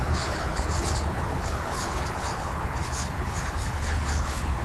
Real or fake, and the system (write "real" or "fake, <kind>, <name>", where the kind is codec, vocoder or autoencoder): fake, codec, HILCodec